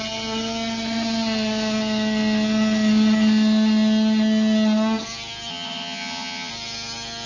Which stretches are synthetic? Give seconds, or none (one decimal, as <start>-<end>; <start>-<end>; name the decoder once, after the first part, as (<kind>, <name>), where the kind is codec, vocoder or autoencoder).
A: 5.5-6.5 (vocoder, HiFi-GAN)